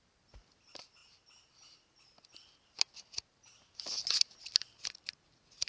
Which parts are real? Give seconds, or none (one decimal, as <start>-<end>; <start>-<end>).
0.0-5.7